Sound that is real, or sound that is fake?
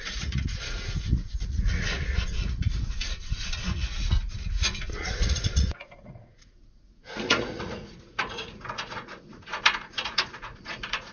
fake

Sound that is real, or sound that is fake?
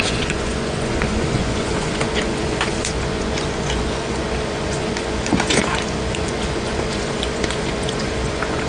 fake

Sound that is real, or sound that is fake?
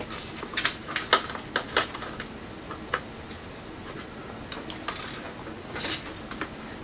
real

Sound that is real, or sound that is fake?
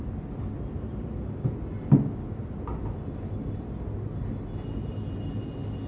real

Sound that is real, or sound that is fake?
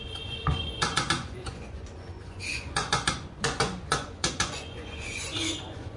fake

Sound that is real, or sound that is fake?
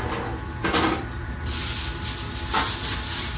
real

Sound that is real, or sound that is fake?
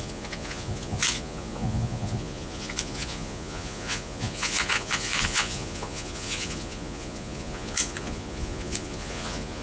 fake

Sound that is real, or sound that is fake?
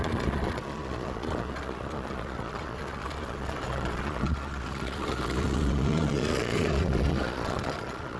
fake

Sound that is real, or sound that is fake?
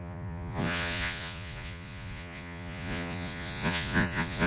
fake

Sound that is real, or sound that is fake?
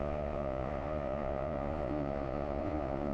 fake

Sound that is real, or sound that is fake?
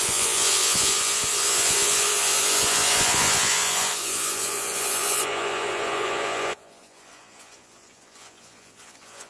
fake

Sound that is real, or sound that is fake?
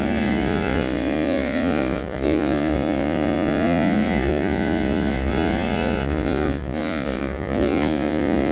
fake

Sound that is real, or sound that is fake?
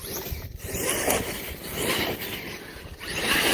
real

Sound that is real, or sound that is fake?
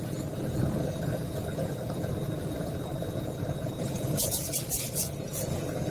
fake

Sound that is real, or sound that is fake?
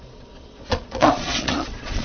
fake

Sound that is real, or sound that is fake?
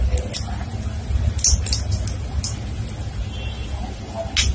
real